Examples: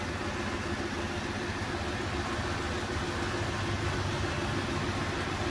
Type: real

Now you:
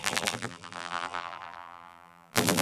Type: fake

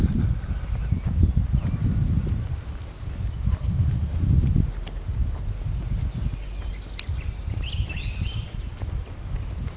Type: real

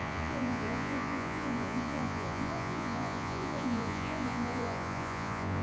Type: fake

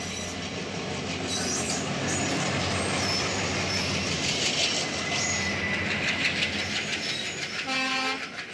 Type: real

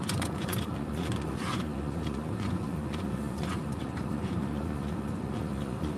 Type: fake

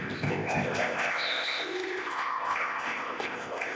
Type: fake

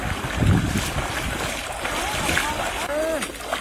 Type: real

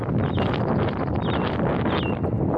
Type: real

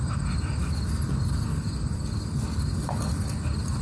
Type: real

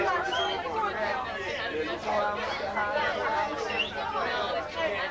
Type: real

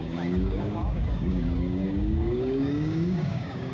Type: fake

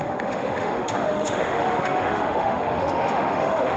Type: fake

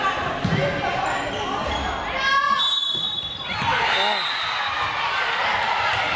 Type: real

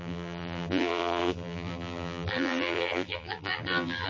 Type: fake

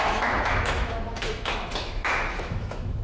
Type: fake